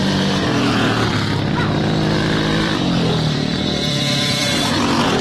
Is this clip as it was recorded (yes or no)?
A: no